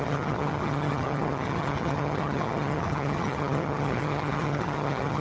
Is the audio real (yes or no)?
no